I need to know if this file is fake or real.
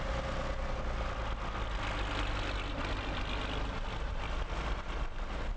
real